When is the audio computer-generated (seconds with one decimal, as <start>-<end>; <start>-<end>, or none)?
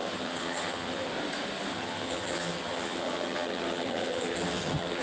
0.0-1.1; 1.7-5.0